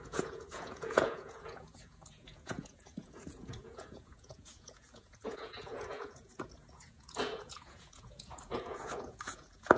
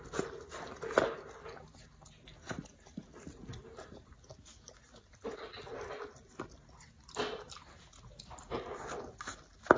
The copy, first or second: first